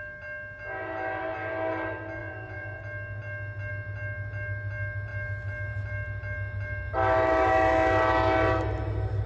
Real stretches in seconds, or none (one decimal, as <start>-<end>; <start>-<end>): 0.0-2.2; 2.8-9.3